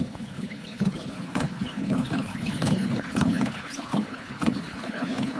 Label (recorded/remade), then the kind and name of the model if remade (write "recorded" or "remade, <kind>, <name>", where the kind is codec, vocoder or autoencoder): remade, codec, HILCodec